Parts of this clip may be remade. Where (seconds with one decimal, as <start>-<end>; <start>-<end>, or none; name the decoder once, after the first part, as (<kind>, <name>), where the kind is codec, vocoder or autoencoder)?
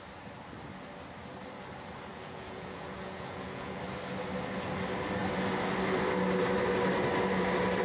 2.1-3.8 (vocoder, Vocos)